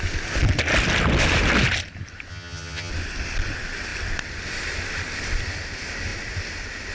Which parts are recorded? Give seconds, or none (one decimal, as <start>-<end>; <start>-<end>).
0.0-2.3; 2.9-6.9